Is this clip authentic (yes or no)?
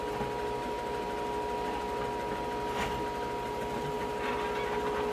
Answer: yes